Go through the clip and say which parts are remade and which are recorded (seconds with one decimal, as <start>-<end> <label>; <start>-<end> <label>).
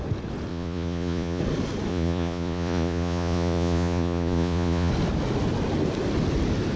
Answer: 0.0-0.5 recorded; 0.5-1.4 remade; 1.4-1.9 recorded; 1.9-4.9 remade; 4.9-6.8 recorded